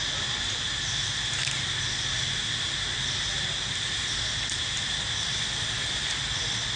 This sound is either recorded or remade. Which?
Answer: recorded